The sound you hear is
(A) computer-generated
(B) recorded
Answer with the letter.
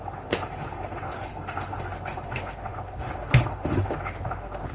A